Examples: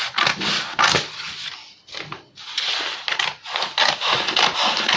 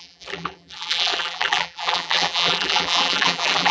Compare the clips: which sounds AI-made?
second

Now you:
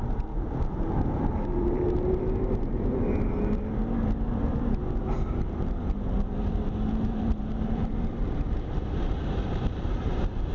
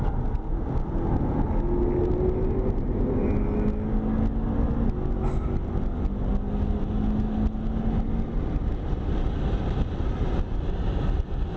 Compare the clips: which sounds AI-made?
first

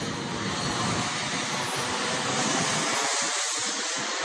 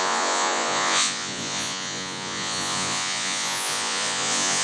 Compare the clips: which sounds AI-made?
second